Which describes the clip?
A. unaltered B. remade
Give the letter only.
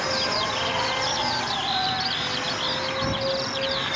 A